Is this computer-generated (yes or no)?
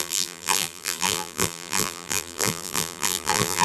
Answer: yes